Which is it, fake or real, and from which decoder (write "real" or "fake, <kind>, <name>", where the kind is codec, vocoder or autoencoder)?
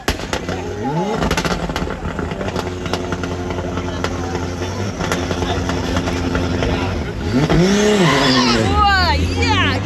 real